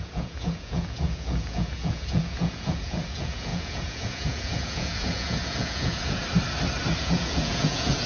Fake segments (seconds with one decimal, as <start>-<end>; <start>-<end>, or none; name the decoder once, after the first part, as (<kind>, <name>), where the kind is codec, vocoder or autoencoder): 0.0-6.2 (vocoder, Vocos); 7.0-8.1

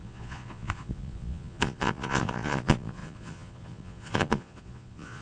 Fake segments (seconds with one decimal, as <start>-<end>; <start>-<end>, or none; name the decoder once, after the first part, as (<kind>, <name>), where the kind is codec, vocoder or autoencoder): 0.0-5.2 (vocoder, Vocos)